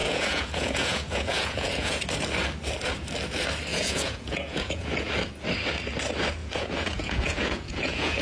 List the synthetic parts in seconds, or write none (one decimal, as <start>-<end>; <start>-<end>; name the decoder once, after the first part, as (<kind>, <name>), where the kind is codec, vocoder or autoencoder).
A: 0.0-2.0 (vocoder, Vocos); 3.7-5.1; 6.4-8.2